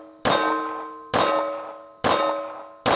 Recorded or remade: recorded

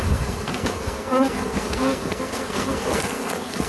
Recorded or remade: remade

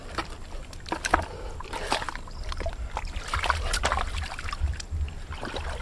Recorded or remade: recorded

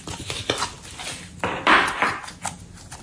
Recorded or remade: recorded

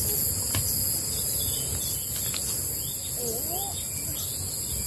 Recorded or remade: recorded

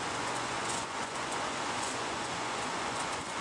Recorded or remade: remade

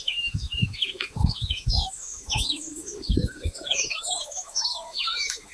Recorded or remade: remade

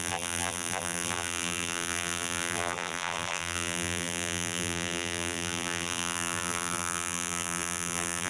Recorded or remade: remade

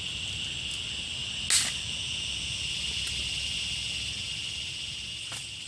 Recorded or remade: recorded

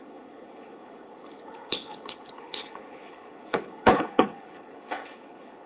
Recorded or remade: remade